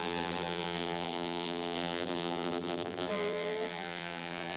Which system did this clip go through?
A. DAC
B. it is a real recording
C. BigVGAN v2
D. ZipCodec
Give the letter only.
C